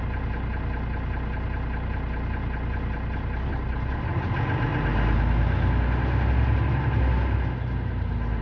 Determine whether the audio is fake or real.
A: real